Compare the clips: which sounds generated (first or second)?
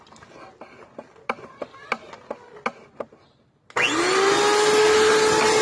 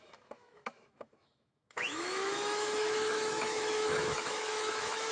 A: second